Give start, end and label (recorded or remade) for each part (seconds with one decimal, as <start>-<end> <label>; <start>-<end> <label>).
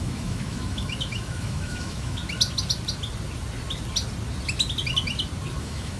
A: 0.0-2.2 remade; 2.2-5.6 recorded; 5.6-6.0 remade